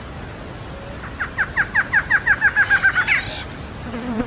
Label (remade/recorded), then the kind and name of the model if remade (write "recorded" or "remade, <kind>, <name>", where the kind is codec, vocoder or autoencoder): recorded